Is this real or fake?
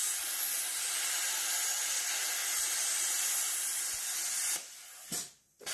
real